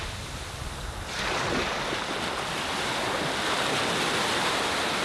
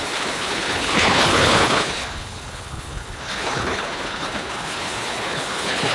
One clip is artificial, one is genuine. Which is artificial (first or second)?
second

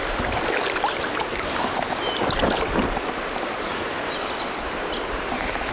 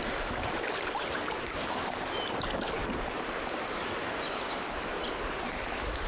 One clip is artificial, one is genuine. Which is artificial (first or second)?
second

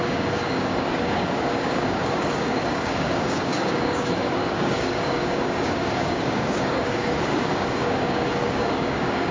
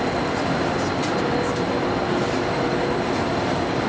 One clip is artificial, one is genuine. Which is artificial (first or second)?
first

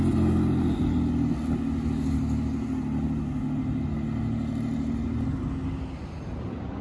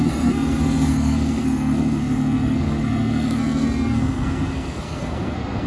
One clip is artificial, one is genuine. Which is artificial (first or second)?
second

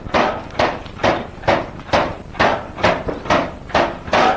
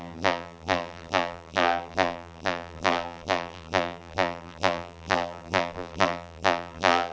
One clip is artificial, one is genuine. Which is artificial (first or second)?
second